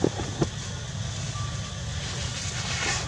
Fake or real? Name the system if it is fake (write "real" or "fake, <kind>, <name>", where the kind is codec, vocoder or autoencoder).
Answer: real